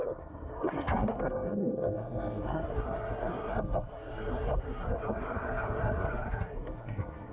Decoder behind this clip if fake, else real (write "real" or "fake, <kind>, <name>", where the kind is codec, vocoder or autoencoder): fake, codec, SNAC